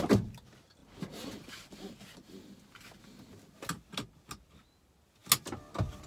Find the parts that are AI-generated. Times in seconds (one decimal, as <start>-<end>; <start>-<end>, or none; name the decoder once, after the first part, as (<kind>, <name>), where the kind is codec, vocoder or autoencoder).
none